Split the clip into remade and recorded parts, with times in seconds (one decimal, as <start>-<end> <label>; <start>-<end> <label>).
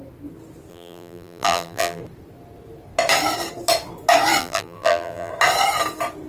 0.0-0.7 recorded; 0.7-2.0 remade; 2.0-4.4 recorded; 4.4-5.3 remade; 5.3-6.3 recorded